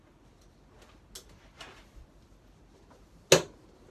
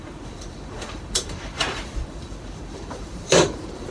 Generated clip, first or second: second